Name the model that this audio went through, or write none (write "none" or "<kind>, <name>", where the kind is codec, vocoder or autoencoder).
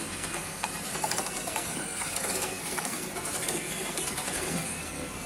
codec, SNAC